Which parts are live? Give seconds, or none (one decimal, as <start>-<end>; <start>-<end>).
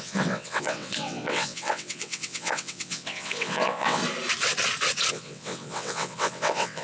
4.0-5.1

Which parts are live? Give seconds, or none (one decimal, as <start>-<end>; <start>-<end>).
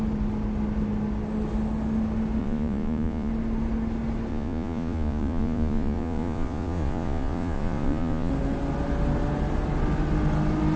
0.0-2.4; 3.3-4.3; 8.3-10.8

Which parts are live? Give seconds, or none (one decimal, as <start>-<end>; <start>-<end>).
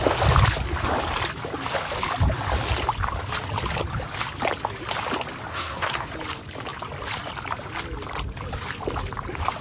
0.0-5.5; 6.1-9.6